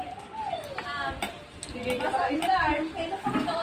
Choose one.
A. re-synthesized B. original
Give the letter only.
B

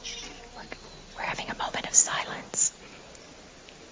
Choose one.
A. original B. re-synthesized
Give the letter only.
A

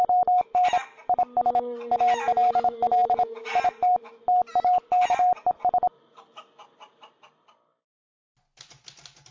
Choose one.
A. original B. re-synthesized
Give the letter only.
A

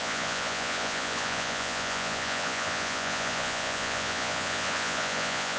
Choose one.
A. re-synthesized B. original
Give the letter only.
A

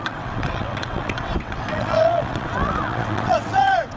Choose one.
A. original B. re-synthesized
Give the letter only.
B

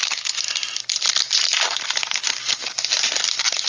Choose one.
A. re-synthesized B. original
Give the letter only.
B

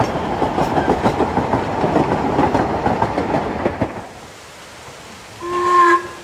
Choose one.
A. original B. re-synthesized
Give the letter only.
A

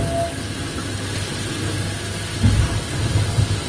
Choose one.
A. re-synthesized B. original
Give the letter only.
B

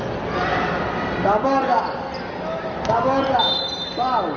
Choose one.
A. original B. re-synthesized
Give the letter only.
A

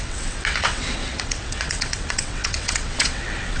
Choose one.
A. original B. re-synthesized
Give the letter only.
B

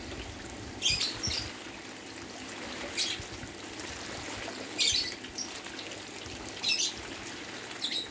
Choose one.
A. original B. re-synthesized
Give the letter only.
A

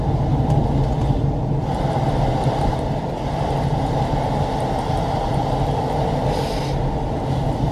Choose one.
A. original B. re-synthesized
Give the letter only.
A